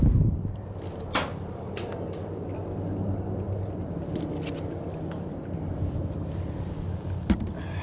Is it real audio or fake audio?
real